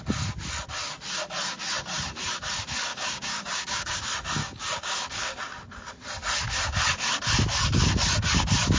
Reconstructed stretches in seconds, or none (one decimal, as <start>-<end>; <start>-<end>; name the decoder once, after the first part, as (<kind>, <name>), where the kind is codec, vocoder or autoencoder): 2.9-4.0 (codec, DAC); 4.4-5.4